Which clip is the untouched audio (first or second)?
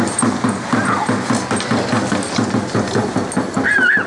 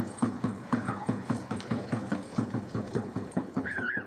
first